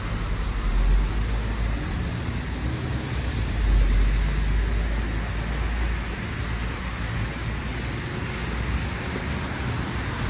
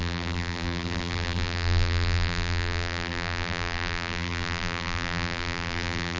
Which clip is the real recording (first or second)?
first